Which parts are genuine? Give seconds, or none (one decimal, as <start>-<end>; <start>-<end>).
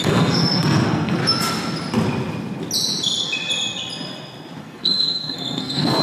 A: 1.2-4.6